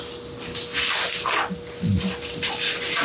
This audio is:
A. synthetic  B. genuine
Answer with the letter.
B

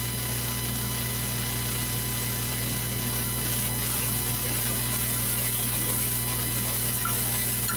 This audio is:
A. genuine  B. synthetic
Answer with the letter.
A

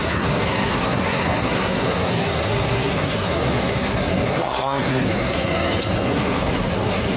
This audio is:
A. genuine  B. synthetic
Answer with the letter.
B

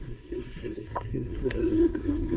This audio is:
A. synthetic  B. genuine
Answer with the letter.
A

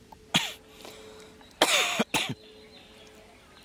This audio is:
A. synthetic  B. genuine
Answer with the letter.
B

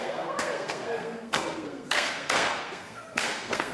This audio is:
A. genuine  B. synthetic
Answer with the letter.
B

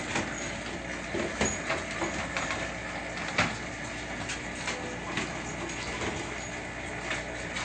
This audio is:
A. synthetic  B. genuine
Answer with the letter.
B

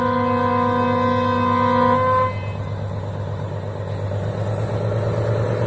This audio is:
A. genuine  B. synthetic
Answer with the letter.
A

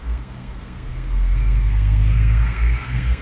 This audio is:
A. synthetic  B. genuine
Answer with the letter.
A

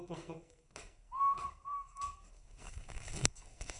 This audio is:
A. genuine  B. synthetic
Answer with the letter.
B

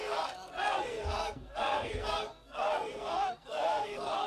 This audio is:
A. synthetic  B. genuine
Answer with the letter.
A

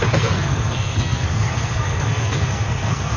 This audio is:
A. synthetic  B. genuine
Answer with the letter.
A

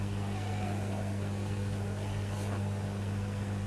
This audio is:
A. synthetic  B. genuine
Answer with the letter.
A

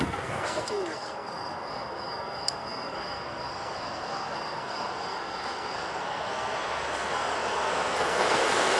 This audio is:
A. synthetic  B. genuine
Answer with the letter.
A